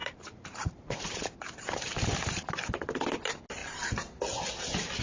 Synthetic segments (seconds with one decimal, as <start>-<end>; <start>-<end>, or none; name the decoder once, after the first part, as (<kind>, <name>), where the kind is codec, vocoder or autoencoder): 0.0-2.4 (vocoder, BigVGAN v2)